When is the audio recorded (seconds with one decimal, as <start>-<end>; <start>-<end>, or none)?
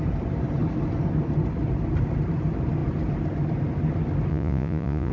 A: 0.0-4.3